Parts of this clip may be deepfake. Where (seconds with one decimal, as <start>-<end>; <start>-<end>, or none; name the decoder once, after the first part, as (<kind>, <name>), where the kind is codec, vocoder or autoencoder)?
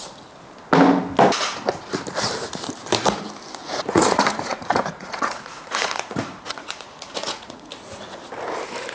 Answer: 3.6-7.7 (vocoder, Vocos)